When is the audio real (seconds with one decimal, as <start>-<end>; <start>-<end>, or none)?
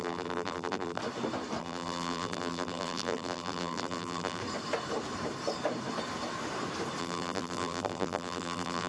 1.0-1.6; 4.4-7.0